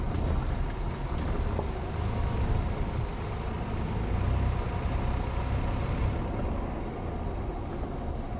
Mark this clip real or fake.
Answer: real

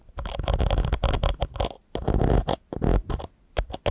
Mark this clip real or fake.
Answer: real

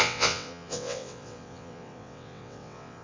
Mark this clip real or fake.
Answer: fake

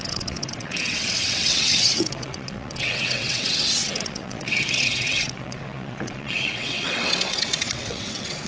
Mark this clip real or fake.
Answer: fake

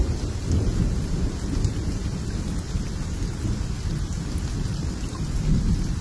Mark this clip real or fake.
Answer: real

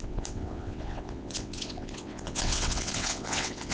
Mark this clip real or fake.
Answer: fake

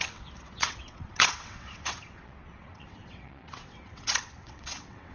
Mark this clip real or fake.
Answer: fake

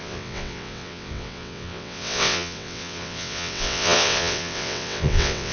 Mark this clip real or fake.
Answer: fake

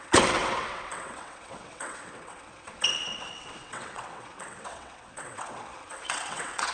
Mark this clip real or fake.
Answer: fake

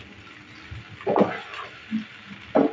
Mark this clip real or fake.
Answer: real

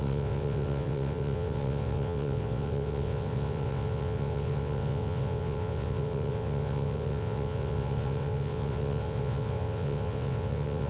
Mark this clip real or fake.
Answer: fake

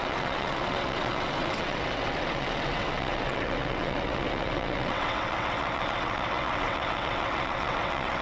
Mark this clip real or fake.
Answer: fake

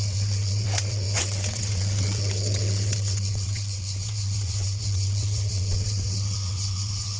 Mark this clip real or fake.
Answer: fake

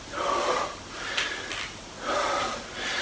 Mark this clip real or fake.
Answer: real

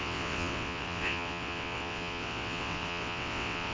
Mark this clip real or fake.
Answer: fake